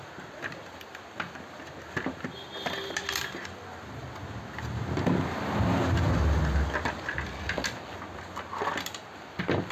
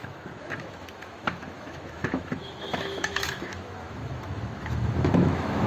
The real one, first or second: first